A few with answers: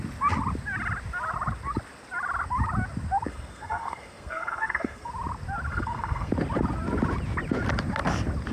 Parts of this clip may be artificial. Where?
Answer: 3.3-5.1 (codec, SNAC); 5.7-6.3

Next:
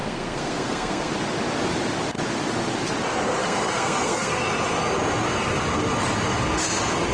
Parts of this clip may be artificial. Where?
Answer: 0.0-1.1 (codec, SNAC); 3.4-4.4

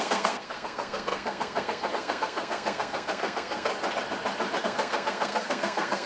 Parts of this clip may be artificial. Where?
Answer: 0.0-3.7 (codec, SNAC); 4.6-6.1

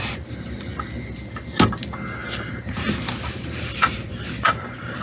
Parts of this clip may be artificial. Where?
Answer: 2.2-5.0 (vocoder, BigVGAN v2)

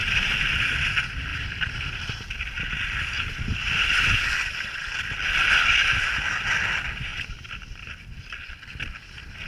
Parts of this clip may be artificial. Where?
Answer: 0.0-0.7 (vocoder, BigVGAN v2); 1.3-6.4; 7.1-8.6

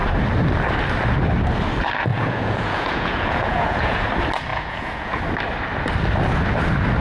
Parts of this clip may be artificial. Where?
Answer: 2.1-4.1 (vocoder, Vocos); 4.5-5.2

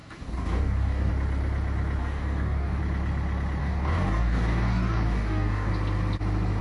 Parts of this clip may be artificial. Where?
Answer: 0.0-1.1 (codec, DAC); 2.0-2.8; 3.6-5.7

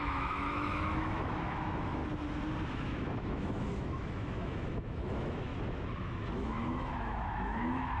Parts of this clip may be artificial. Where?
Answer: 0.0-2.0 (autoencoder, DAC-VAE); 2.7-5.5; 6.0-8.0